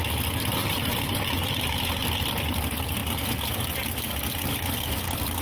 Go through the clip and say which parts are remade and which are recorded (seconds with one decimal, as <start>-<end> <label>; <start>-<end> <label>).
0.0-0.6 recorded; 0.6-1.9 remade; 1.9-5.4 recorded

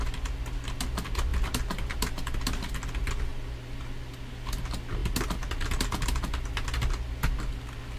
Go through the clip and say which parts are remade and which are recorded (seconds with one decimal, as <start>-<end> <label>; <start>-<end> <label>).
0.0-8.0 recorded

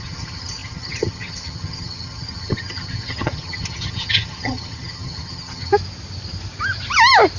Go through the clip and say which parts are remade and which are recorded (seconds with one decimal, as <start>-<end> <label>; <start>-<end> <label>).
0.0-5.7 remade; 5.7-7.4 recorded

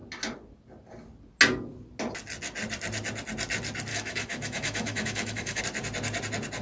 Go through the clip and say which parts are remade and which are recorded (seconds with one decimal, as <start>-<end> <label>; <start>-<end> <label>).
0.0-3.9 recorded; 3.9-5.6 remade; 5.6-6.6 recorded

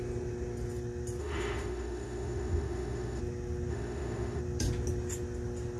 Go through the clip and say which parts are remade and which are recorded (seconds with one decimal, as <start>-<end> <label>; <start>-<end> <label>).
0.0-1.2 recorded; 1.2-3.2 remade; 3.2-3.7 recorded; 3.7-4.4 remade; 4.4-5.8 recorded

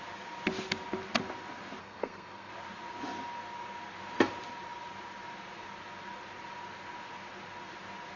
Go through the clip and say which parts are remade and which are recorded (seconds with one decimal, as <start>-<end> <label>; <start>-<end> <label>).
0.0-1.8 recorded; 1.8-2.5 remade; 2.5-8.2 recorded